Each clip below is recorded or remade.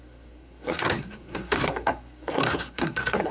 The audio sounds remade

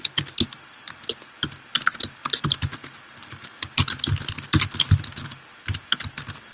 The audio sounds recorded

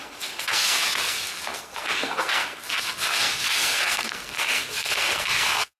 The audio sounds remade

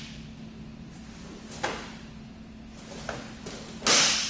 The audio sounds recorded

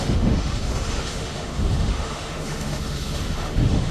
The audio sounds remade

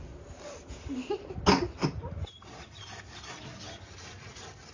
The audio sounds recorded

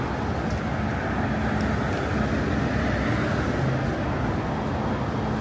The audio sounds recorded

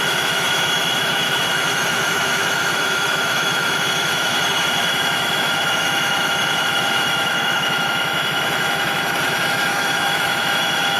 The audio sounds remade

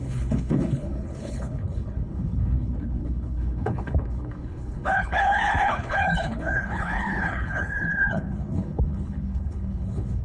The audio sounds remade